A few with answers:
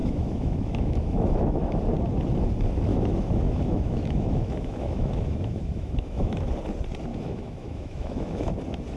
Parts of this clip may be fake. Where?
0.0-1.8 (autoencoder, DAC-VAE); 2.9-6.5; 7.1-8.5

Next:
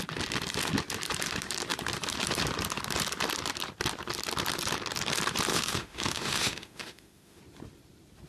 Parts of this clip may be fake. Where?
5.5-7.4 (autoencoder, DAC-VAE)

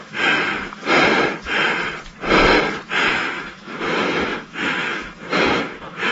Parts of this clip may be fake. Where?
0.0-0.8 (autoencoder, DAC-VAE); 3.0-6.1

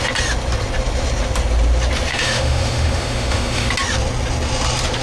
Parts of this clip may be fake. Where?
2.1-3.7 (autoencoder, DAC-VAE)

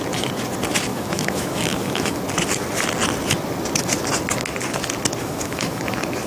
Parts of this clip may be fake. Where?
0.9-2.2 (autoencoder, DAC-VAE); 5.2-5.8

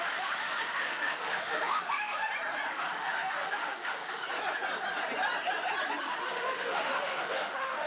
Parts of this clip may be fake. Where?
0.0-2.2 (autoencoder, DAC-VAE); 2.7-4.2; 6.0-7.9